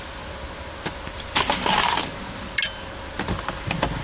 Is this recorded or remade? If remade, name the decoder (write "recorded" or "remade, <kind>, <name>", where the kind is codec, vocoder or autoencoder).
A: recorded